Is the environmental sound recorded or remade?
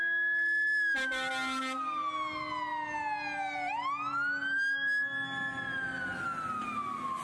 recorded